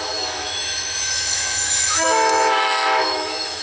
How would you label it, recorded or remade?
remade